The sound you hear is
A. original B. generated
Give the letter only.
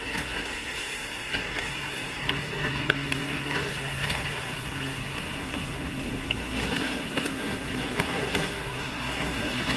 B